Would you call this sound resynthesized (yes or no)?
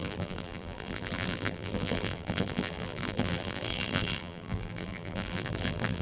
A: yes